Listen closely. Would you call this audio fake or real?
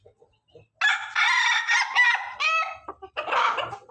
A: real